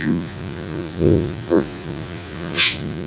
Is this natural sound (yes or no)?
no